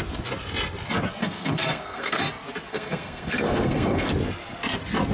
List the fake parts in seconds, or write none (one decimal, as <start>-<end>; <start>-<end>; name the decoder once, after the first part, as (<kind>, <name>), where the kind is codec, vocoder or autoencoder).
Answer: 1.2-2.2 (codec, SNAC); 2.7-4.1